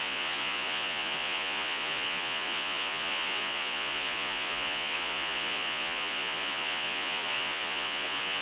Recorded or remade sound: remade